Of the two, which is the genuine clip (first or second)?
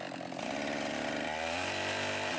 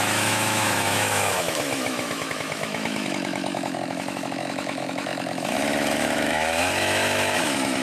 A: first